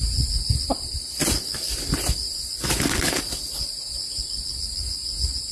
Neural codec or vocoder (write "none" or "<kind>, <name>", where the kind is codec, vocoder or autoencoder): none